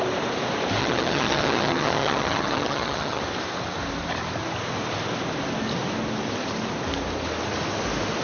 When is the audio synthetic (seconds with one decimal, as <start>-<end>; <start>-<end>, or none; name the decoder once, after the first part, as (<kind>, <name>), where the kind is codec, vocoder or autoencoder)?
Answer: 0.8-3.2 (vocoder, HiFi-GAN)